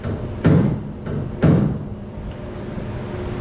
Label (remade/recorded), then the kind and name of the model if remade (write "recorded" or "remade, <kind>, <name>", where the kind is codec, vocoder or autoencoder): recorded